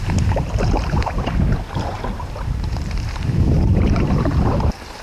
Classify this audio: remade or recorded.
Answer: remade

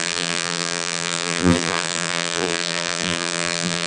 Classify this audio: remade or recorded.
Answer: remade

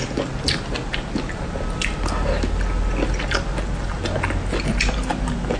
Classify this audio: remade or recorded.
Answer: recorded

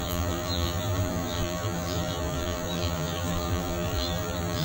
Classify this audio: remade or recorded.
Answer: remade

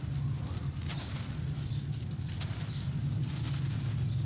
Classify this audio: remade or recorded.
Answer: recorded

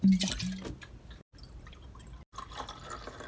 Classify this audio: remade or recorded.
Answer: recorded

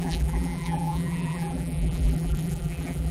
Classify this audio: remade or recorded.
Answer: remade